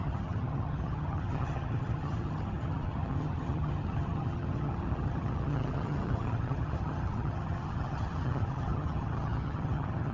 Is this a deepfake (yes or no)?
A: yes